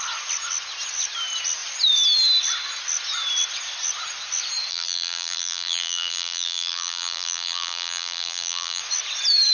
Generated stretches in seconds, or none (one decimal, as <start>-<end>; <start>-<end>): 4.7-8.8